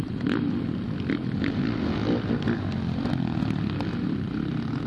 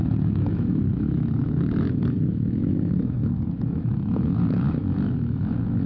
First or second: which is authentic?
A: first